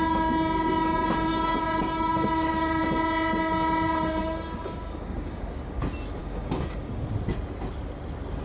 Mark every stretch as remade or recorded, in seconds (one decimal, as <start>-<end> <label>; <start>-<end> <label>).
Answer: 0.0-1.3 recorded; 1.3-2.8 remade; 2.8-4.2 recorded; 4.2-5.8 remade; 5.8-6.2 recorded; 6.2-7.1 remade; 7.1-8.4 recorded